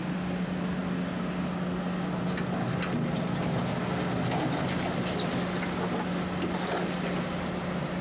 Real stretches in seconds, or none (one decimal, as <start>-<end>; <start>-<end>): 0.0-8.0